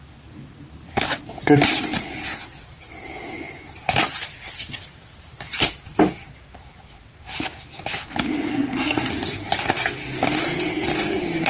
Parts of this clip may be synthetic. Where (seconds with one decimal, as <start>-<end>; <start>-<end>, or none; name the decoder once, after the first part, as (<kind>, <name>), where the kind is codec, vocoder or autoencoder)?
8.5-9.1 (codec, SNAC)